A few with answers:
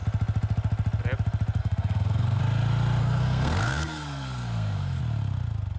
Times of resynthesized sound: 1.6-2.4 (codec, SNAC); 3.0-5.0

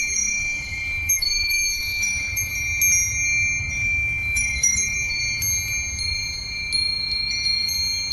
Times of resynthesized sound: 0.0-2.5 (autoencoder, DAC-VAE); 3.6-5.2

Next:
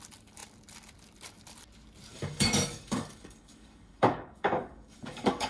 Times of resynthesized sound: 2.1-5.5 (codec, DAC)

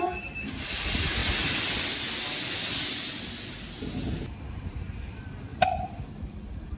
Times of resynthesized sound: 0.0-1.2 (vocoder, BigVGAN v2); 4.5-6.8

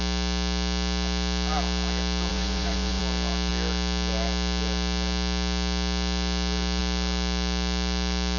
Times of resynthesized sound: 2.3-3.0 (vocoder, Vocos)

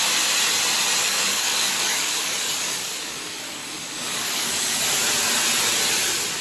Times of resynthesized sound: 1.0-4.8 (codec, DAC)

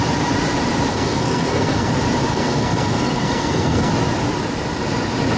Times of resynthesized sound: 0.9-1.9 (codec, SNAC); 2.3-3.9